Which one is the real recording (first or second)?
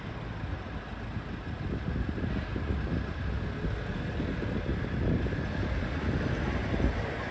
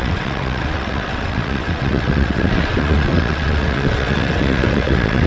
first